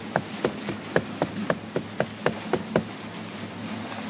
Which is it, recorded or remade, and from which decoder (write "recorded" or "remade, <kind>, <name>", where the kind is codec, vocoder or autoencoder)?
recorded